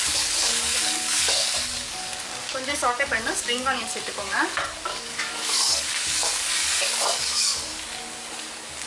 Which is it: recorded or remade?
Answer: remade